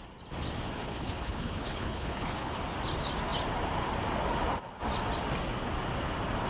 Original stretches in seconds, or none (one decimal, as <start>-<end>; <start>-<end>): 0.0-0.8; 2.5-6.5